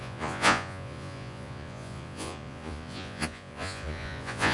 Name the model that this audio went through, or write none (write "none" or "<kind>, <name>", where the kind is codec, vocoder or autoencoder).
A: vocoder, Vocos